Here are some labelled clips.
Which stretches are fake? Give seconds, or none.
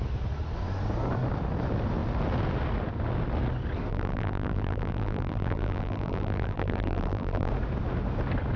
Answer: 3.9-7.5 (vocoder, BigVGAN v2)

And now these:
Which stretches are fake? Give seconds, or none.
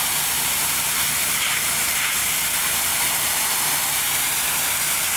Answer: none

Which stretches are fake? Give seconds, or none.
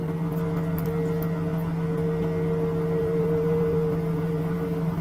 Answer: 3.0-5.0 (vocoder, BigVGAN v2)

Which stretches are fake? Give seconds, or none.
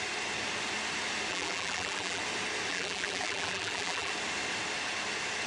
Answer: 1.3-2.2 (vocoder, BigVGAN v2); 2.7-4.1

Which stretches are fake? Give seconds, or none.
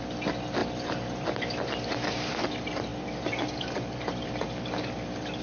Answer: none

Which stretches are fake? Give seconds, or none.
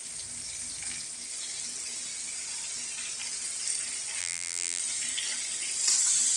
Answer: 4.2-4.8 (vocoder, BigVGAN v2)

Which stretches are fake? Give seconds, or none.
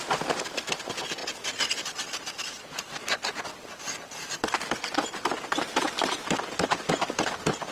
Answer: 0.0-1.2 (vocoder, BigVGAN v2); 5.8-7.7